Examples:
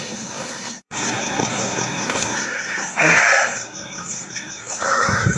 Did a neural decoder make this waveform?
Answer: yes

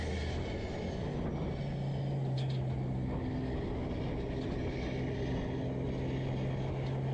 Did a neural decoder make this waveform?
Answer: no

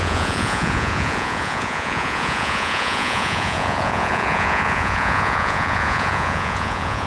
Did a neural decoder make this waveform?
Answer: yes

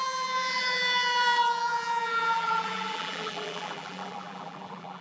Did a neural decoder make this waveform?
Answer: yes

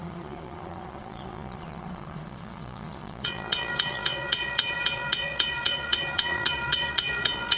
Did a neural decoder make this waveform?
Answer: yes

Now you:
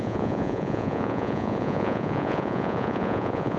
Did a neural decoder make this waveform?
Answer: yes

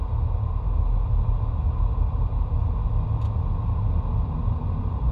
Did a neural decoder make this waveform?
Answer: no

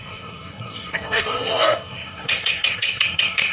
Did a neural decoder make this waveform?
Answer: yes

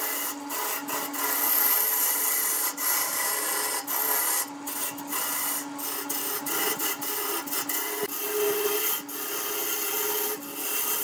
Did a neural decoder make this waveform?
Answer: no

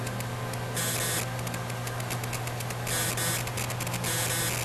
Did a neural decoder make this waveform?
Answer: no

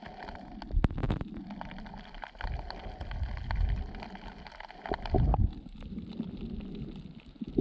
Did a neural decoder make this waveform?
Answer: no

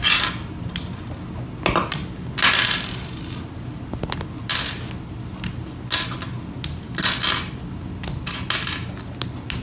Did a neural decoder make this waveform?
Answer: no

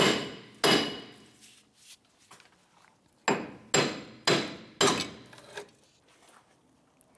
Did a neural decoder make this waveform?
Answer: no